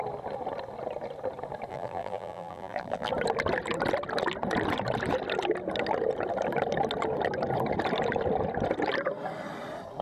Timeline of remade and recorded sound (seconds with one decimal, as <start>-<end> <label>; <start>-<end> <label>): 0.0-1.7 recorded; 1.7-3.1 remade; 3.1-10.0 recorded